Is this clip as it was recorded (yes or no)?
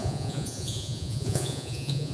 no